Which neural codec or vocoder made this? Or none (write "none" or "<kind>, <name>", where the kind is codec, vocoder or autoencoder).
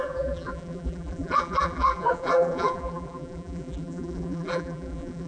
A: vocoder, BigVGAN v2